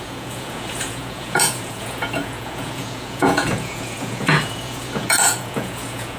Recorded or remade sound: remade